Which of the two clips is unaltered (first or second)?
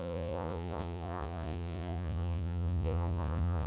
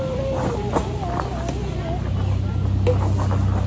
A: second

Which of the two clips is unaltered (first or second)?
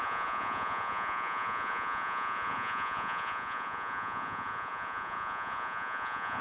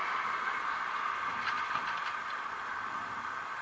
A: second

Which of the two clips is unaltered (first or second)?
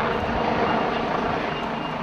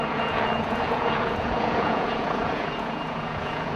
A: first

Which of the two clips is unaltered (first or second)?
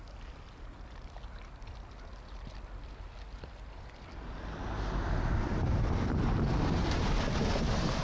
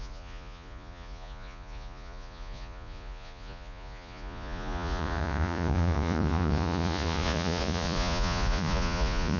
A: first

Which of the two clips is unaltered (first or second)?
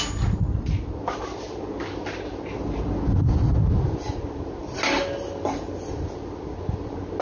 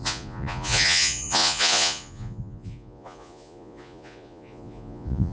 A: first